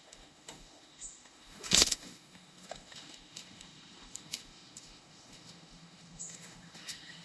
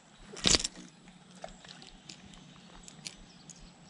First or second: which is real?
second